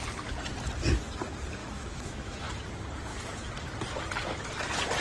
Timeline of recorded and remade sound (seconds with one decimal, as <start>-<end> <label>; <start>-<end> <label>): 0.0-1.6 recorded; 1.6-2.5 remade; 2.5-3.1 recorded; 3.1-3.7 remade; 3.7-5.0 recorded